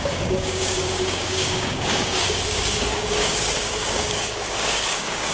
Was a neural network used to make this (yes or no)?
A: yes